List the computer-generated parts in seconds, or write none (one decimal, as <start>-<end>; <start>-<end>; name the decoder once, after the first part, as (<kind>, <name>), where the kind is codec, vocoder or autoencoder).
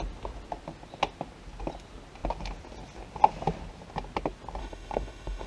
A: 4.6-5.5 (autoencoder, DAC-VAE)